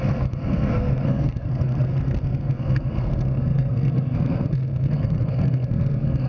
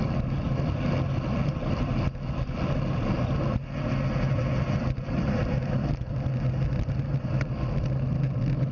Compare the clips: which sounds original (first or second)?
second